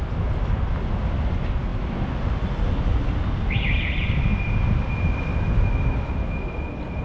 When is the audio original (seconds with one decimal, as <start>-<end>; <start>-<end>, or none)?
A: 0.0-7.0